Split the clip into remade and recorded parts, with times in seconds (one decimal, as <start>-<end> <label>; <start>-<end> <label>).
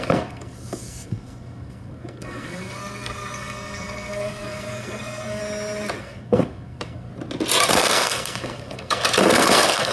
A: 0.0-5.4 remade; 5.4-6.0 recorded; 6.0-7.1 remade; 7.1-7.7 recorded; 7.7-9.9 remade